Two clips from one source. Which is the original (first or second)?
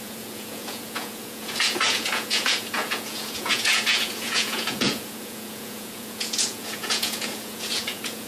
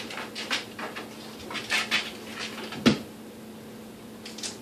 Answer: second